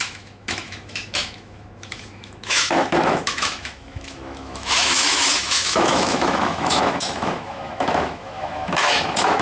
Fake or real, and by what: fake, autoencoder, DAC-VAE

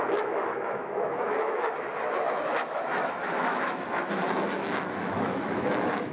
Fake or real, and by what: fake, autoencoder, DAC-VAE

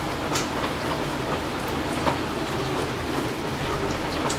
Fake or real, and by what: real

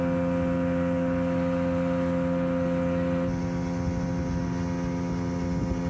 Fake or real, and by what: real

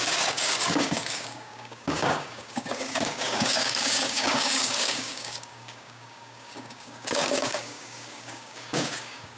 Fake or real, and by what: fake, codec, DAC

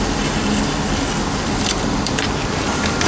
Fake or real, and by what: fake, vocoder, BigVGAN v2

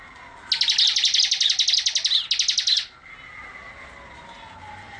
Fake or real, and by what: real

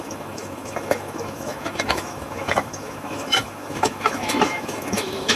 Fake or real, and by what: fake, autoencoder, DAC-VAE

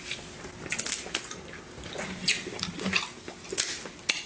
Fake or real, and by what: real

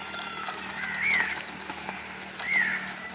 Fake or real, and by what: real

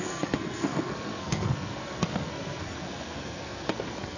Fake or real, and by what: fake, codec, SNAC